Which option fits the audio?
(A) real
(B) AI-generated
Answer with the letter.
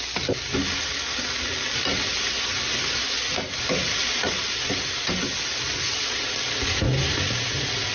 A